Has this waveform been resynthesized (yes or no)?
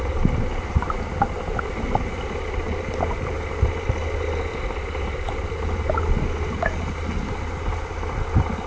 no